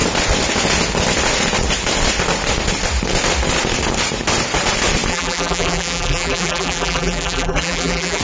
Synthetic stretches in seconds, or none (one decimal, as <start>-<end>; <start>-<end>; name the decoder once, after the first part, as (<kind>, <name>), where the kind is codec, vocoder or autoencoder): 5.1-8.2 (vocoder, BigVGAN v2)